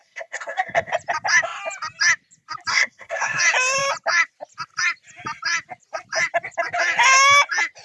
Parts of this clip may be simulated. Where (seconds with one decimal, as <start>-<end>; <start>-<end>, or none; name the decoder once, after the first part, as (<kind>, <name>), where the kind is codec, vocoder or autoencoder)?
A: 0.0-0.9 (codec, SNAC); 2.7-3.4